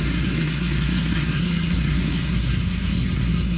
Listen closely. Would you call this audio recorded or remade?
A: remade